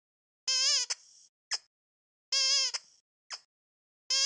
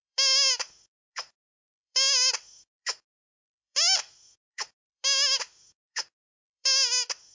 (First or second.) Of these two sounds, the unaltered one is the first